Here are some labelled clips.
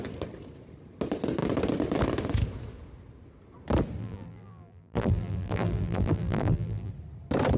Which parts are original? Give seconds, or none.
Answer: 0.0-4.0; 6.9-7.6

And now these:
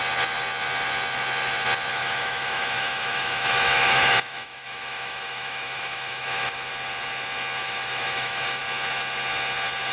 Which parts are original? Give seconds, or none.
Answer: 0.0-1.9; 6.7-7.6; 8.6-9.9

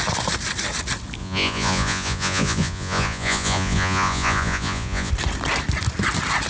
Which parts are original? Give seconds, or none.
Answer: 0.0-1.2; 5.1-6.5

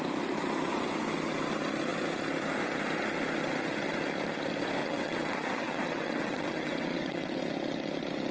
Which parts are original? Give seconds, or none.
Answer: 0.0-4.8; 7.4-8.3